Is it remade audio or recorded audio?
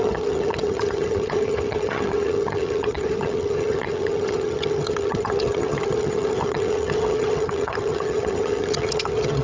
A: remade